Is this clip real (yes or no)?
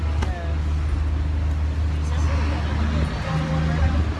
yes